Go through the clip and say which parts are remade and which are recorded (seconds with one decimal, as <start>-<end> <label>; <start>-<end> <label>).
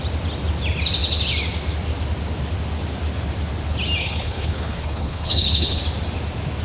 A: 0.0-4.0 recorded; 4.0-5.8 remade; 5.8-6.6 recorded